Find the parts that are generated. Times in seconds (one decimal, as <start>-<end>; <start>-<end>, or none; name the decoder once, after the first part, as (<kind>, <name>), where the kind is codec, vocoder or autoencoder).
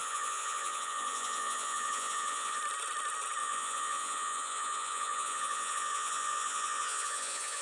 0.0-2.6 (vocoder, Vocos); 3.4-7.6